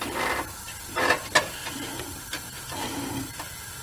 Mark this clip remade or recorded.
remade